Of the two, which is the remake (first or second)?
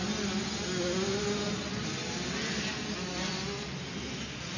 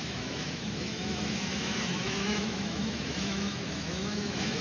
second